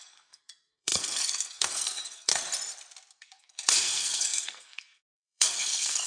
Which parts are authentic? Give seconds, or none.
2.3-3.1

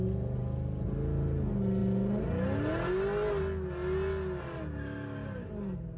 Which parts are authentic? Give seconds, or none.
0.0-6.0

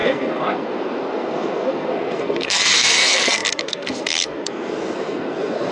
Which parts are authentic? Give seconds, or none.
none